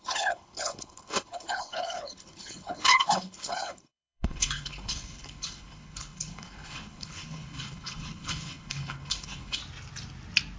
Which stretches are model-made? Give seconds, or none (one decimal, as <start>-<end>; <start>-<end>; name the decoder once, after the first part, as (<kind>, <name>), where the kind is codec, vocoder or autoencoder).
0.0-9.6 (codec, HILCodec)